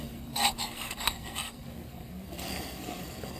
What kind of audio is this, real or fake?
fake